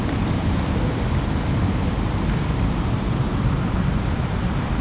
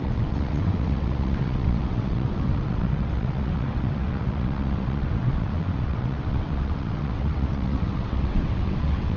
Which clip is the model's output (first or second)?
second